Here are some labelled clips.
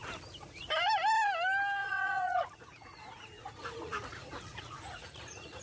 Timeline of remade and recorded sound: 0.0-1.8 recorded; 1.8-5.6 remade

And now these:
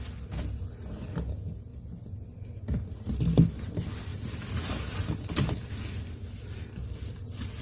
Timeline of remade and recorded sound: 0.0-7.6 recorded

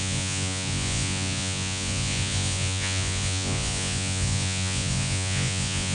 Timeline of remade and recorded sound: 0.0-5.9 remade

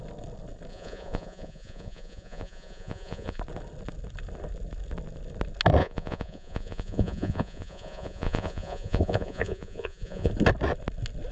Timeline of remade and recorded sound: 0.0-0.7 recorded; 0.7-3.4 remade; 3.4-5.8 recorded; 5.8-10.3 remade; 10.3-11.3 recorded